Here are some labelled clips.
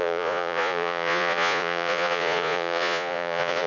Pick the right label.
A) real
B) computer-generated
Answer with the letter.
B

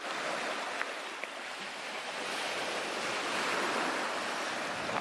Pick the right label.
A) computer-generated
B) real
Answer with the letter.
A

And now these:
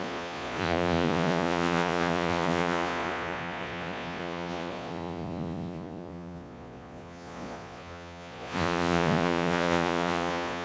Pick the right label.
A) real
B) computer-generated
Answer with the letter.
B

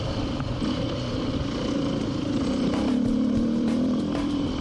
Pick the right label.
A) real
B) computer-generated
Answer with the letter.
B